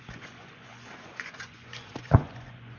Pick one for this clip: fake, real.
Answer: fake